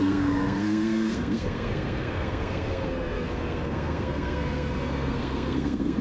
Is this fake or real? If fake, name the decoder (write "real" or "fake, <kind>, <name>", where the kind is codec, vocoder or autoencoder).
fake, codec, SNAC